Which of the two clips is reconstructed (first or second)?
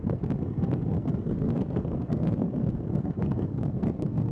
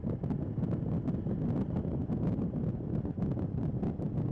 first